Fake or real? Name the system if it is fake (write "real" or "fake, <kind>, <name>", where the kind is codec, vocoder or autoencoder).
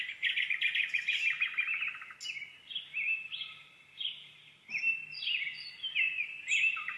real